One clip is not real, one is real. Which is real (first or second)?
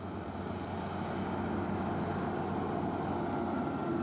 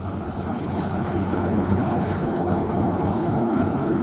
first